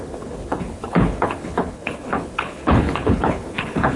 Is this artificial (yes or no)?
yes